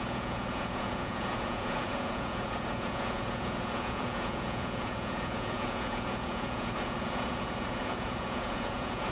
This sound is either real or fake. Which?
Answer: fake